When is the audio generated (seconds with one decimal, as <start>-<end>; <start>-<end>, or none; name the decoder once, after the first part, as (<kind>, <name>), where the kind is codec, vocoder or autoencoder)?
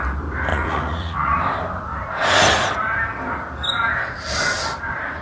0.5-1.4 (vocoder, Vocos)